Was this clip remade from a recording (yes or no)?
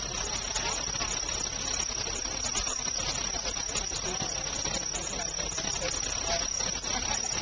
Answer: no